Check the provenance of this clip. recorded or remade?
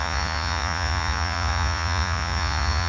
remade